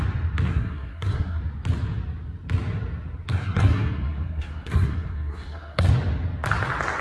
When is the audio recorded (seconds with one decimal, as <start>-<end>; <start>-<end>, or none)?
0.0-0.5; 1.4-3.3; 5.9-7.0